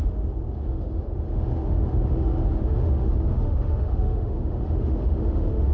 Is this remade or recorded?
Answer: remade